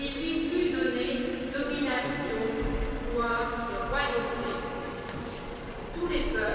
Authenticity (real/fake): real